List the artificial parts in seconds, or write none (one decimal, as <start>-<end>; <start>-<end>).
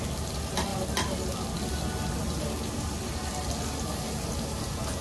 none